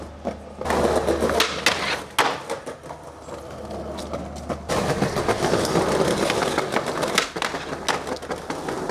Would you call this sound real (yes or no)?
yes